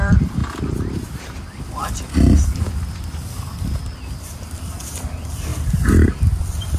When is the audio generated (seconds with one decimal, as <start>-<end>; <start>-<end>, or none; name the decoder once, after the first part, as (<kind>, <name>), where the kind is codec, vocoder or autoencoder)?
0.0-0.4 (vocoder, BigVGAN v2); 4.2-5.5; 6.3-6.8